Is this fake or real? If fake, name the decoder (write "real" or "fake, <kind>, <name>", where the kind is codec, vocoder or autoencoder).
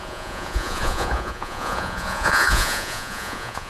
fake, vocoder, Vocos